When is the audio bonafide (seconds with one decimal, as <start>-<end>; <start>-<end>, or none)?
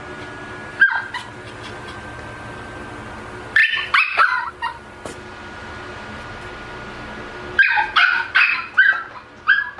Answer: 0.0-3.6; 4.5-9.8